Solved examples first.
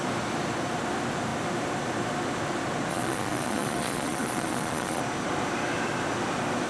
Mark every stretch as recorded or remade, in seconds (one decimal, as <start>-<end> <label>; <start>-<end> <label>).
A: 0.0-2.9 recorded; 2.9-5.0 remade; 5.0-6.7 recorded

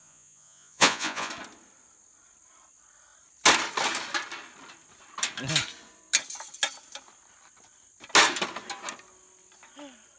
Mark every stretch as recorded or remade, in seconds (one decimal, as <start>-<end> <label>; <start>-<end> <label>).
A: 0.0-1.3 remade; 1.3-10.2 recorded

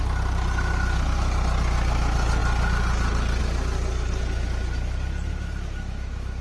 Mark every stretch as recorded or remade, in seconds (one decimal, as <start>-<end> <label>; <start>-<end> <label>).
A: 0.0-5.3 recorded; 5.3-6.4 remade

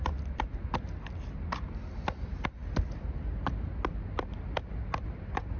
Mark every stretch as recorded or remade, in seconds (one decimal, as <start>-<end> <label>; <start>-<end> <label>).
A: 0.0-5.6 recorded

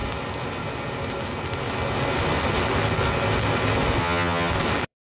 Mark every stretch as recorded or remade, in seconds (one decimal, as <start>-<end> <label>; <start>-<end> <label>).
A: 0.0-4.0 recorded; 4.0-4.5 remade; 4.5-5.1 recorded

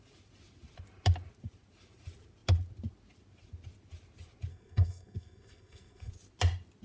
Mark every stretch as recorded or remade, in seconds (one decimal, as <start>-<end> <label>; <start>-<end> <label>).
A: 0.0-4.5 recorded; 4.5-6.1 remade; 6.1-6.8 recorded